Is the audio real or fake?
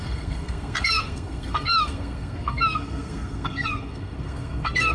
fake